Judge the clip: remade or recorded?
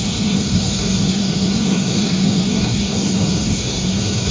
remade